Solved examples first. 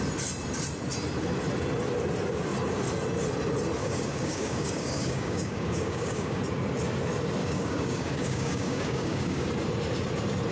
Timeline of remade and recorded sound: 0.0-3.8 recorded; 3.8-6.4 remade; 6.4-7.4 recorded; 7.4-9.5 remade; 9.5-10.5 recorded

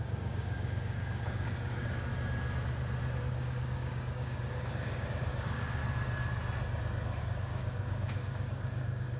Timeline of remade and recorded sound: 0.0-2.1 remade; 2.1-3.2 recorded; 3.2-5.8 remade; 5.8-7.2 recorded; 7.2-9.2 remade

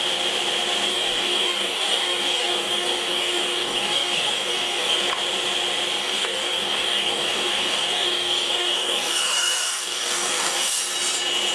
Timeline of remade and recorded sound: 0.0-0.9 recorded; 0.9-5.0 remade; 5.0-6.0 recorded; 6.0-10.8 remade; 10.8-11.5 recorded

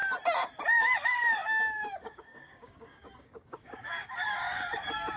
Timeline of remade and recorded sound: 0.0-0.8 recorded; 0.8-5.2 remade

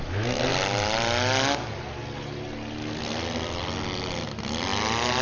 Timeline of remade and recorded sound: 0.0-5.2 recorded